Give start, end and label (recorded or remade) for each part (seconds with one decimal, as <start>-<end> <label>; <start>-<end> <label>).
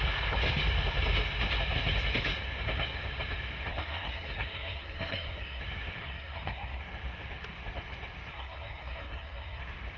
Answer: 0.0-3.7 recorded; 3.7-5.6 remade; 5.6-6.0 recorded; 6.0-6.8 remade; 6.8-8.3 recorded; 8.3-9.6 remade; 9.6-10.0 recorded